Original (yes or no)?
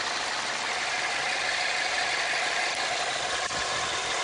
yes